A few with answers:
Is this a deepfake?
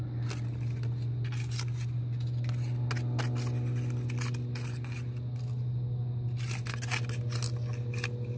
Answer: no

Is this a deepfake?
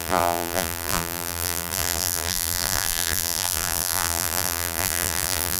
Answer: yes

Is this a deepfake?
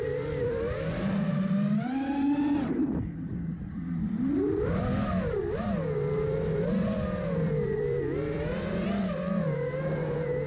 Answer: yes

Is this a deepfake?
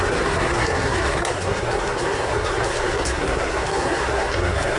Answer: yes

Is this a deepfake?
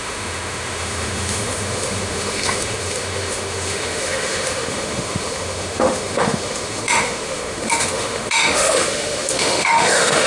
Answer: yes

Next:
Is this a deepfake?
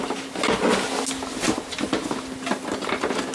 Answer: no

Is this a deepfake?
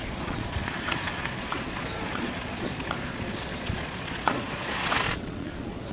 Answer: yes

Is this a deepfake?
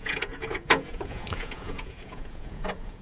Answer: yes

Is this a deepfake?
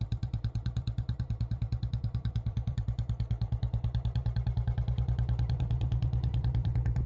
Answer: yes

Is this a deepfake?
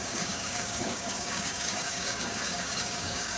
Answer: yes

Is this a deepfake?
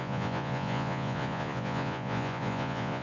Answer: yes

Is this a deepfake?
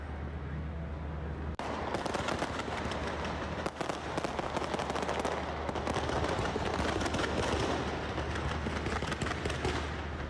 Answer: no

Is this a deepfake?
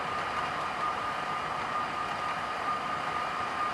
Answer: yes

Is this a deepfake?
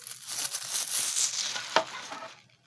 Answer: no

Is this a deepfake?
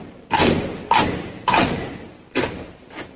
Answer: no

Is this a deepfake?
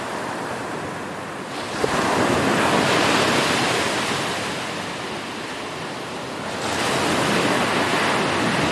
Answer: yes